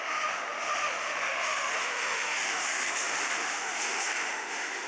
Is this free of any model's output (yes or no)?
no